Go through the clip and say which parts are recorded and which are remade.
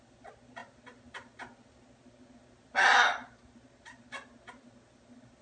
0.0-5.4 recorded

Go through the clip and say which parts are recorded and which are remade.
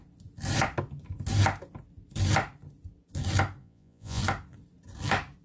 0.0-3.6 recorded; 3.6-4.2 remade; 4.2-5.4 recorded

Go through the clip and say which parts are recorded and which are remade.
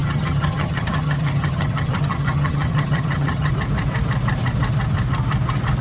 0.0-3.5 remade; 3.5-5.8 recorded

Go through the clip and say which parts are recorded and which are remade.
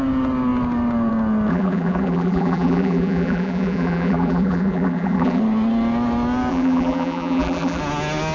0.0-1.5 recorded; 1.5-5.4 remade; 5.4-6.5 recorded; 6.5-7.8 remade; 7.8-8.3 recorded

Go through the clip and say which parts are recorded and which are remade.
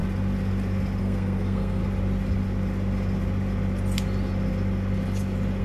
0.0-1.0 recorded; 1.0-1.8 remade; 1.8-5.6 recorded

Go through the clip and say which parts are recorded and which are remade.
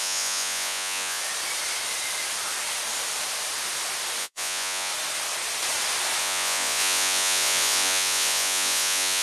0.0-1.2 remade; 1.2-4.2 recorded; 4.2-4.9 remade; 4.9-6.2 recorded; 6.2-9.2 remade